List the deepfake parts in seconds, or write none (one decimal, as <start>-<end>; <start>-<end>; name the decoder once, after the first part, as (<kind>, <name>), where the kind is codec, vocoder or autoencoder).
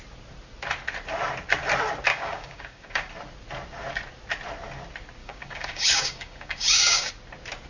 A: 2.1-3.1 (codec, DAC); 5.2-7.1